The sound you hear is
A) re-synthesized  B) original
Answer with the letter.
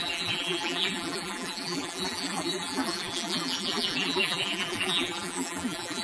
A